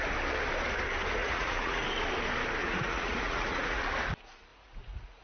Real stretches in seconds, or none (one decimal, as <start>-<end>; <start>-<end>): 0.0-1.2; 1.8-2.6; 3.8-4.5

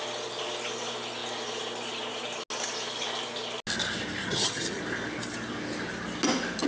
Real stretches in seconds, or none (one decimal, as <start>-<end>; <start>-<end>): 0.0-4.2; 4.8-6.7

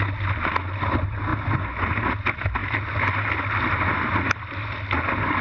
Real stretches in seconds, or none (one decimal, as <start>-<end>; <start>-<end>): 0.0-5.4